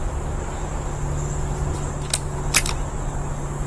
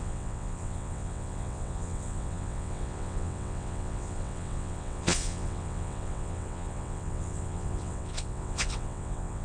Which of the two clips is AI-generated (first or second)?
second